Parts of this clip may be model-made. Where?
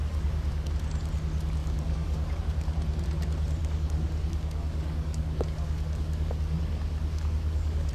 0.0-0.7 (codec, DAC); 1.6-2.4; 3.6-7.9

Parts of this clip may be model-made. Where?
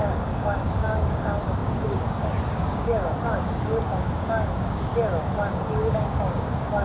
0.0-4.9 (codec, DAC); 5.5-6.8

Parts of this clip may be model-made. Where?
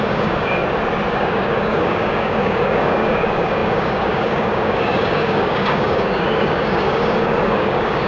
0.0-0.6 (codec, DAC); 1.1-8.1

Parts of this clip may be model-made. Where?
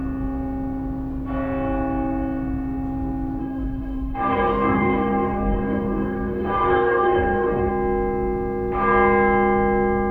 3.4-7.7 (codec, DAC)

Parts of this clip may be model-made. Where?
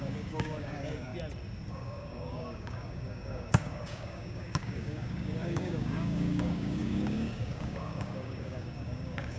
0.0-1.1 (codec, DAC); 1.7-9.4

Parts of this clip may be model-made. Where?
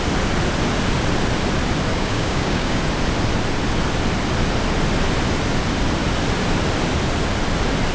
1.9-2.8 (codec, DAC)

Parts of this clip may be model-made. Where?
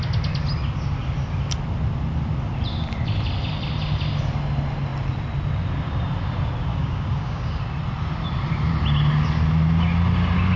6.7-7.6 (codec, DAC)